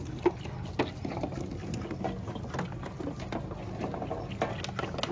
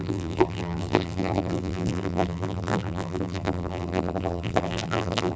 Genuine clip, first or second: first